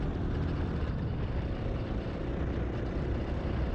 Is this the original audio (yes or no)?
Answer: no